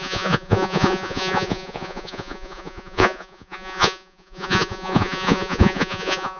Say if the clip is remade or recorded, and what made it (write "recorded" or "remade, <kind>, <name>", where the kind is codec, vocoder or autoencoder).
remade, vocoder, Vocos